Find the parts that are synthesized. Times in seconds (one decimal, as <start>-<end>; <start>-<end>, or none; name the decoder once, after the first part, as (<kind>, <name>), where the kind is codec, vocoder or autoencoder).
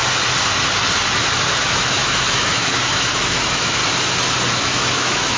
1.5-3.8 (autoencoder, DAC-VAE); 4.5-5.4